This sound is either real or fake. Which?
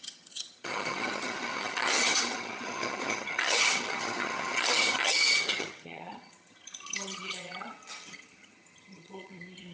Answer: fake